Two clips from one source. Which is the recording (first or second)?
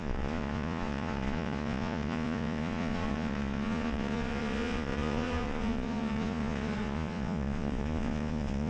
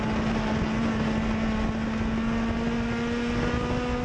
second